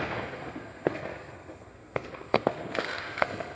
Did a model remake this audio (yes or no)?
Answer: yes